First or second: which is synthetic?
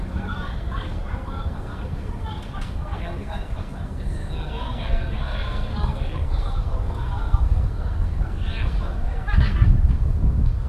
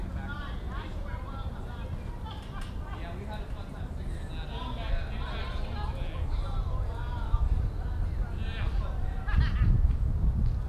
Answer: first